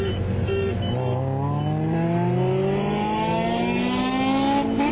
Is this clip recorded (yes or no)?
yes